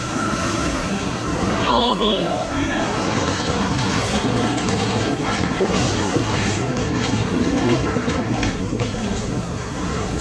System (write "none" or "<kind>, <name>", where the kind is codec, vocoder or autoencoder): codec, SNAC